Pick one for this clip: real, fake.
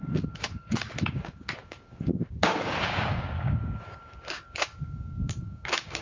fake